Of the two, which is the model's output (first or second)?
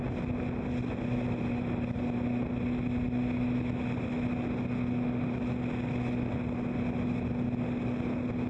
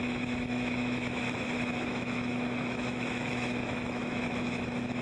second